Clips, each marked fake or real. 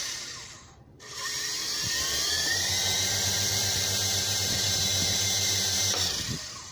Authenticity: fake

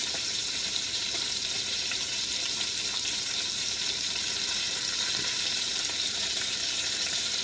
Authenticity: fake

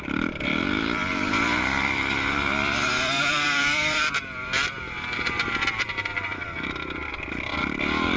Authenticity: fake